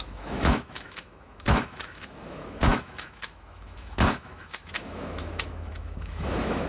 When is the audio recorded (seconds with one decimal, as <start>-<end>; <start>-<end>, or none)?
none